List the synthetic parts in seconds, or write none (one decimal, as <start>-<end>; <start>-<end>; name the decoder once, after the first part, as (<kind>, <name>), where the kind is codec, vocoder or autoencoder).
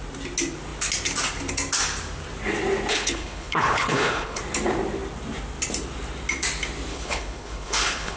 2.9-4.4 (codec, HILCodec); 6.9-8.2